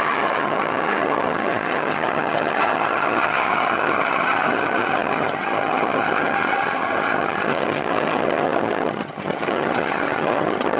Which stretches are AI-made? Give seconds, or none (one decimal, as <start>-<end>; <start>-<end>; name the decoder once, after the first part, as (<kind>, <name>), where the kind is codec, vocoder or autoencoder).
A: 0.0-10.8 (vocoder, HiFi-GAN)